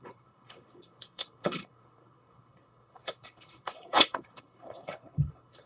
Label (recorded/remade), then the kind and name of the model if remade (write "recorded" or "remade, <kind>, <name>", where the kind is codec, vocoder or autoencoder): remade, codec, HILCodec